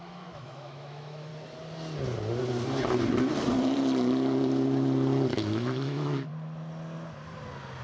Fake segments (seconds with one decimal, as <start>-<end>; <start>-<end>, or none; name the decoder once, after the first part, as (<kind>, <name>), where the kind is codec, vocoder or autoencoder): 0.0-1.3 (autoencoder, DAC-VAE); 5.3-6.3